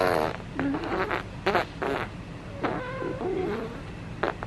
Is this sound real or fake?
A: real